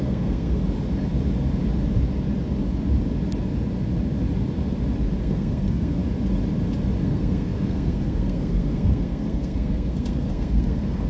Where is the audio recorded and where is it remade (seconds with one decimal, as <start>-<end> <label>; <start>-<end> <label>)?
0.0-0.6 remade; 0.6-5.2 recorded; 5.2-6.0 remade; 6.0-7.0 recorded; 7.0-11.1 remade